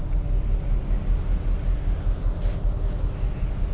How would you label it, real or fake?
real